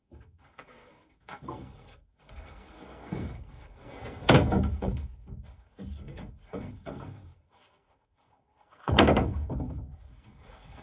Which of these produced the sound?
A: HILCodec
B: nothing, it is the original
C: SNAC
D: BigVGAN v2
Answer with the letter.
C